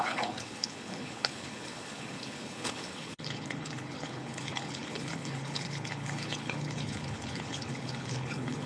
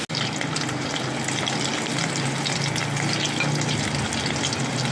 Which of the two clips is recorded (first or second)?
second